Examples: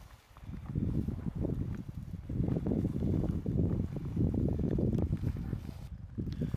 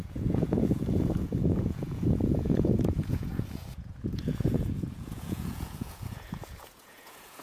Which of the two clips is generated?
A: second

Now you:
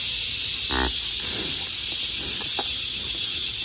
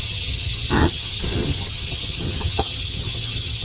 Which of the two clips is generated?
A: second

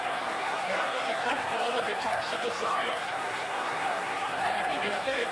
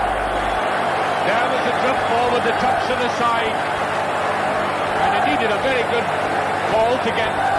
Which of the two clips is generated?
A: first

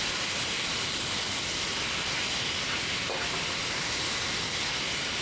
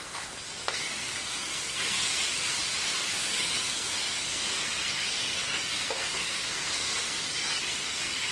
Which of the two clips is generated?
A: second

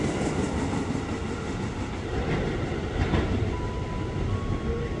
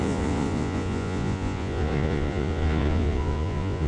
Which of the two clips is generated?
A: second